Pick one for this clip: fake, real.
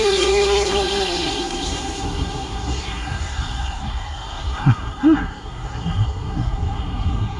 fake